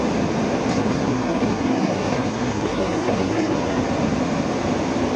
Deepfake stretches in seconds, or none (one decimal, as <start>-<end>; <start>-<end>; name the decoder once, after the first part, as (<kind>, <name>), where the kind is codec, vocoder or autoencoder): 0.7-3.8 (codec, SNAC)